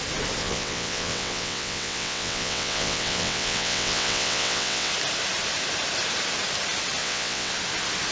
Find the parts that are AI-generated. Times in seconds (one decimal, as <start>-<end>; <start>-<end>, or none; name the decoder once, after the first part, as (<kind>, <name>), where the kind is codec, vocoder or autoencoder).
0.4-4.9 (vocoder, WaveNeXt); 7.0-7.5